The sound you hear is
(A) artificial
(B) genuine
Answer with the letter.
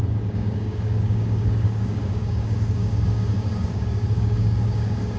A